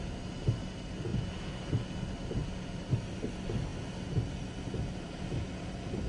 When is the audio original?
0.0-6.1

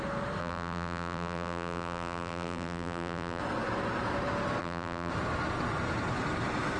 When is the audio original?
0.0-0.4; 3.4-4.6; 5.1-6.8

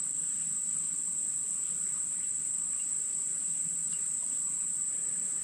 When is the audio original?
1.2-1.9

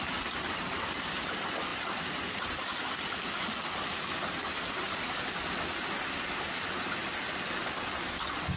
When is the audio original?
0.0-8.6

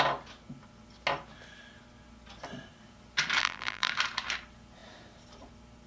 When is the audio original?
0.0-3.4; 3.9-5.9

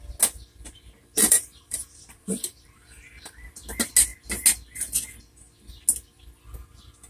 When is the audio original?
0.0-1.2; 3.5-7.1